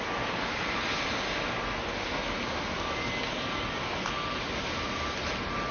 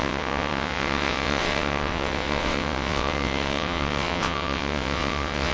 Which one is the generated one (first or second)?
second